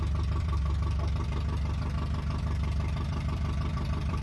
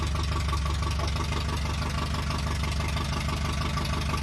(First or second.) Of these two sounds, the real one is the second